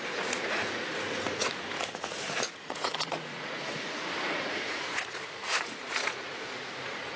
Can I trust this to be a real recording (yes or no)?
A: no